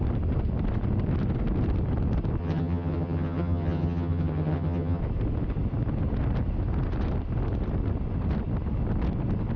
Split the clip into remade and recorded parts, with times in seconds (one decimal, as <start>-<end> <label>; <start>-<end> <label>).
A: 0.0-2.4 recorded; 2.4-5.0 remade; 5.0-9.6 recorded